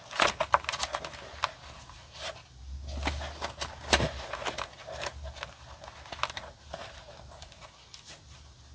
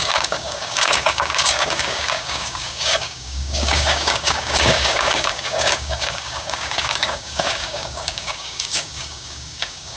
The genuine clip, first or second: first